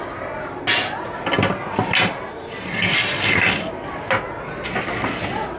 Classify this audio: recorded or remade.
recorded